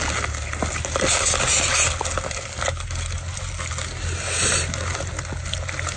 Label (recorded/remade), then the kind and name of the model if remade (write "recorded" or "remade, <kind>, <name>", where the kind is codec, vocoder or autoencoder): recorded